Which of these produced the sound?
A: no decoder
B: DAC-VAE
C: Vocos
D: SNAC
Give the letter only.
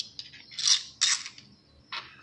A